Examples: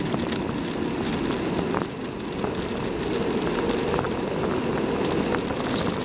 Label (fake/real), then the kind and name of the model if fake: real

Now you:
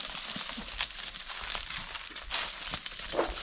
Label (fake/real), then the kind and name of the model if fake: real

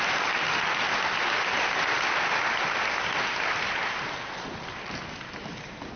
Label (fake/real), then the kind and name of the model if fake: real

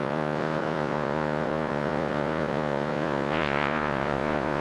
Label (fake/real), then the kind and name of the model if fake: fake, vocoder, Vocos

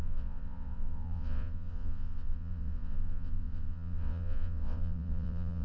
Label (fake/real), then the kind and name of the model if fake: fake, vocoder, WaveNeXt